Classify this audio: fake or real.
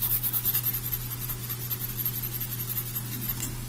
real